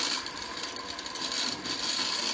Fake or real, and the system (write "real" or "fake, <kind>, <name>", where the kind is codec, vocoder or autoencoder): real